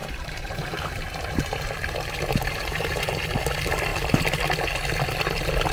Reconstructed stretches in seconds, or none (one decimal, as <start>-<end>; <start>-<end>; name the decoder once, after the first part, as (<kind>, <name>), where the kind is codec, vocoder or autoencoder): 0.0-3.1 (vocoder, BigVGAN v2)